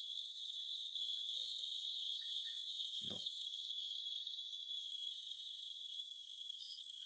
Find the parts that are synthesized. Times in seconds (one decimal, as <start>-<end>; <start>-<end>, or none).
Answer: 0.0-7.1